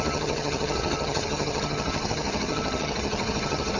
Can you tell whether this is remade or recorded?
remade